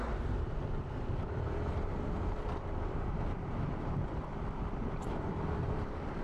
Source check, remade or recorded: remade